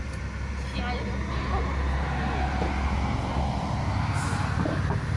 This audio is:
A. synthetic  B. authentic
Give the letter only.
B